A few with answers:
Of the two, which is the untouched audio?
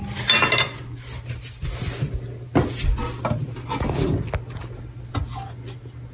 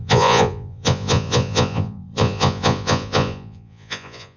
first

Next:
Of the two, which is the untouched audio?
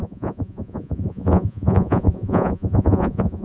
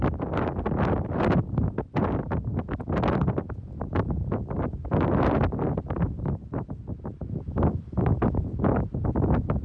second